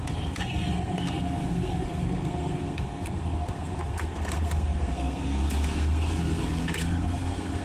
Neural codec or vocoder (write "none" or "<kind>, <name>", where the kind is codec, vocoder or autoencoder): codec, SNAC